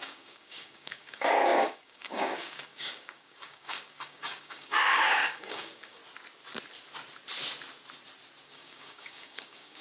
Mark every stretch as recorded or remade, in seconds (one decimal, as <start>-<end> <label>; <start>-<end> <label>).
0.0-6.0 remade; 6.0-8.4 recorded; 8.4-9.8 remade